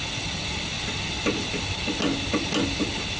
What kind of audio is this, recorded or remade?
recorded